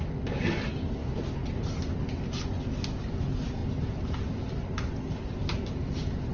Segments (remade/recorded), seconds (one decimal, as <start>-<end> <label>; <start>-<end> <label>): 0.0-6.3 recorded